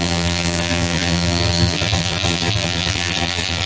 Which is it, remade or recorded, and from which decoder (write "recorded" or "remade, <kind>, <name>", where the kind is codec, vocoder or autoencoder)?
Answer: remade, vocoder, BigVGAN v2